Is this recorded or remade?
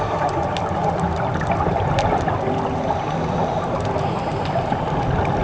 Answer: recorded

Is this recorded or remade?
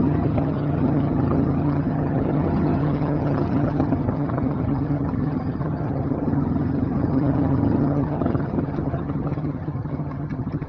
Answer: remade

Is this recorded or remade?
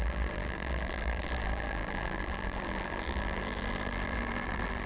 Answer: remade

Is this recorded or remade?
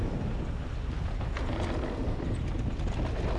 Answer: recorded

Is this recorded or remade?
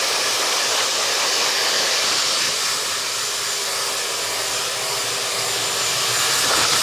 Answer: recorded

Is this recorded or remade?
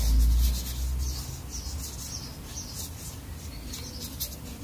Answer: recorded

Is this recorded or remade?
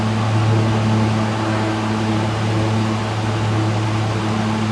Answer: recorded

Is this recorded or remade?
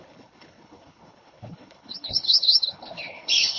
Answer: remade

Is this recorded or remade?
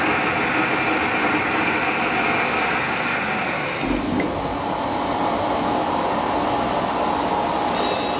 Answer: recorded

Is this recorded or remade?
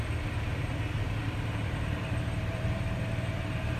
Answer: remade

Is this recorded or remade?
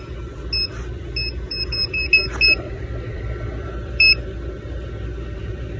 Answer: recorded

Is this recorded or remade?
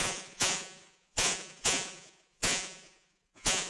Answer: remade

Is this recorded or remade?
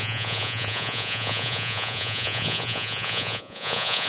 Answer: remade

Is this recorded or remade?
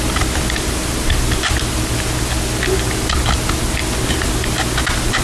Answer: recorded